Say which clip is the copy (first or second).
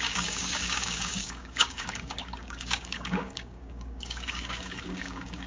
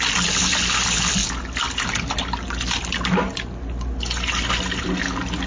first